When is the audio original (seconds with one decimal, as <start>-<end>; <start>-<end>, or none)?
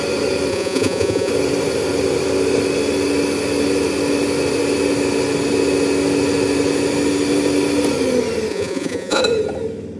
0.0-0.5; 1.3-8.5; 9.2-10.0